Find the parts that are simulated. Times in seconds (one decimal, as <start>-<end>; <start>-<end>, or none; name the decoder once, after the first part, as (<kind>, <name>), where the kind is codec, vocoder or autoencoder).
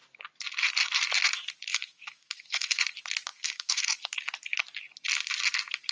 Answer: 1.7-2.8 (autoencoder, DAC-VAE); 3.3-3.8